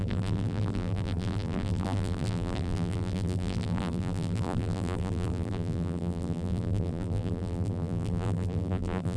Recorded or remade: remade